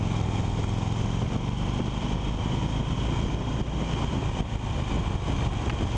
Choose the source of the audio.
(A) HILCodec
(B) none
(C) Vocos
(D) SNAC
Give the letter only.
B